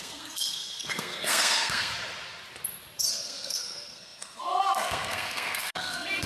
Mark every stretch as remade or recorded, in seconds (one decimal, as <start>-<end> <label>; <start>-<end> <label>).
0.0-1.9 remade; 1.9-3.1 recorded; 3.1-6.3 remade